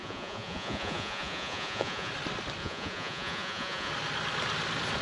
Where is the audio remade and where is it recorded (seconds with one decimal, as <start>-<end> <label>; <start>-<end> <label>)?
0.0-2.1 remade; 2.1-2.6 recorded; 2.6-3.9 remade; 3.9-5.0 recorded